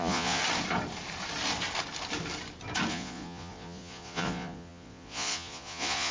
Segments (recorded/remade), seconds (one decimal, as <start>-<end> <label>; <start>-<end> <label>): 0.0-0.4 remade; 0.4-2.9 recorded; 2.9-6.1 remade